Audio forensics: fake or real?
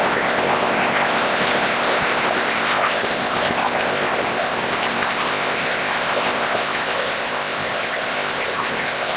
fake